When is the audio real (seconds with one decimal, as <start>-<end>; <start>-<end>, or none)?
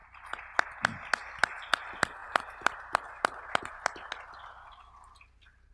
0.0-5.7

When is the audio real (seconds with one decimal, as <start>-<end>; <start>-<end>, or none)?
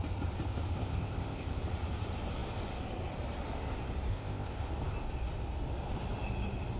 0.0-0.8; 1.6-4.1; 4.7-6.8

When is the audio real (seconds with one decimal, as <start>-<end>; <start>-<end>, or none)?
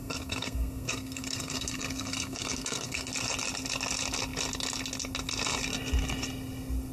3.1-6.9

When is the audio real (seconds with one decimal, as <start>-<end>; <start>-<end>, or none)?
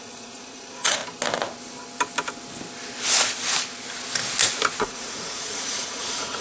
1.0-4.8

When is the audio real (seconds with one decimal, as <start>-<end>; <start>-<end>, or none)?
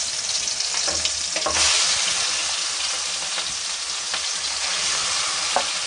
0.0-5.9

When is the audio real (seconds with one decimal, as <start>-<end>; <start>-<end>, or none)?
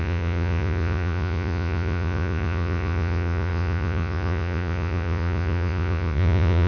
none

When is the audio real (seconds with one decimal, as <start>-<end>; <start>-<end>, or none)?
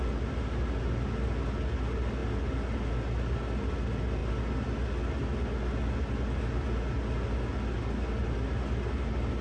0.0-9.4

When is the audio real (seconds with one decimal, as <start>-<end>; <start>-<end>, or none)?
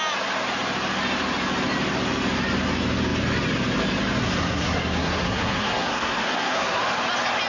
0.0-4.2; 6.8-7.5